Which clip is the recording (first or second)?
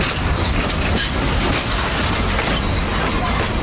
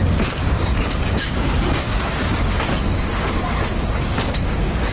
first